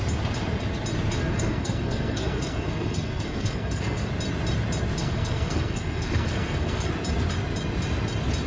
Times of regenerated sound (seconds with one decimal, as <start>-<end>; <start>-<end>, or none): 1.2-4.1; 5.0-6.9